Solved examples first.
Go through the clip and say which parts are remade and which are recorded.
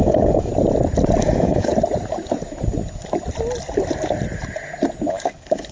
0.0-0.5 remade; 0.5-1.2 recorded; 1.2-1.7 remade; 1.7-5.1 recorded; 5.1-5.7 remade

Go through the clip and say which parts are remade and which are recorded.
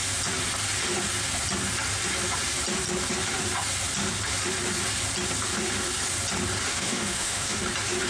0.0-6.7 recorded; 6.7-7.6 remade; 7.6-8.1 recorded